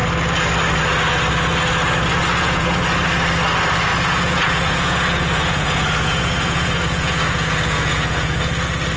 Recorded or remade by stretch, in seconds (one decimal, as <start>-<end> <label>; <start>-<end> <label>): 0.0-2.3 recorded; 2.3-2.8 remade; 2.8-3.9 recorded; 3.9-8.4 remade; 8.4-9.0 recorded